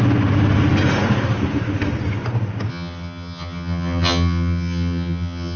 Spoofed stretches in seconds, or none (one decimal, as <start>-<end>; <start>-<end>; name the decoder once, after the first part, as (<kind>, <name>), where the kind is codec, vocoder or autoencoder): 2.7-5.6 (vocoder, HiFi-GAN)